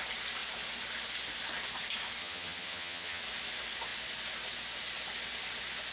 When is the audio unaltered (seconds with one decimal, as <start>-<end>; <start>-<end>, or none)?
0.0-2.2; 3.2-5.9

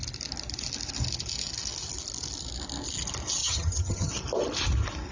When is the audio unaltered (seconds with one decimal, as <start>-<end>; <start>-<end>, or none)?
0.0-3.4; 4.1-5.1

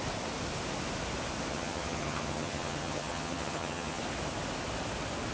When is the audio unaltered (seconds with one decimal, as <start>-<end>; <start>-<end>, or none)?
0.0-1.5; 4.0-5.3

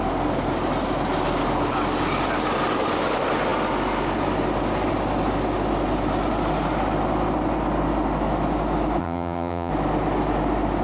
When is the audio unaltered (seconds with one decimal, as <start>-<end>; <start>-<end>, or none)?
0.0-9.0; 9.7-10.8

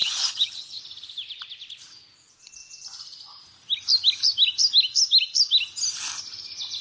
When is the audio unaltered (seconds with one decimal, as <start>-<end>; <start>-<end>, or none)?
0.8-6.8